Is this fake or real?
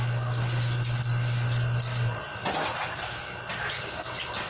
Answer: real